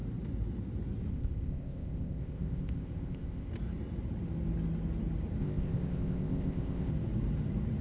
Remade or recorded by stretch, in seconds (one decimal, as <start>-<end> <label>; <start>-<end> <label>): 0.0-1.1 recorded; 1.1-3.5 remade; 3.5-5.4 recorded; 5.4-6.9 remade; 6.9-7.8 recorded